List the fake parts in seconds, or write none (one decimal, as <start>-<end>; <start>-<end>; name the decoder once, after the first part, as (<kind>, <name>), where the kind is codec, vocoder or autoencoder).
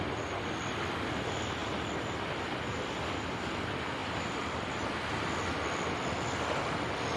1.6-2.3 (vocoder, BigVGAN v2)